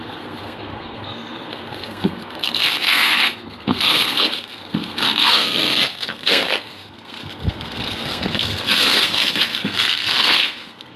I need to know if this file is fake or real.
fake